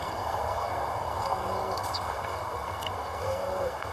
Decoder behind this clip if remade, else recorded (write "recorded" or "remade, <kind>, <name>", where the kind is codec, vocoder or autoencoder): remade, codec, SNAC